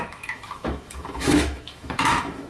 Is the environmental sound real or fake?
fake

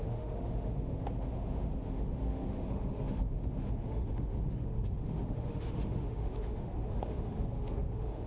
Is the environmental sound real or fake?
fake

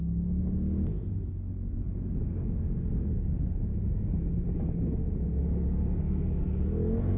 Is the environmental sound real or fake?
real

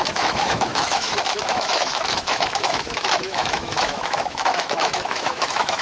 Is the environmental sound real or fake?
fake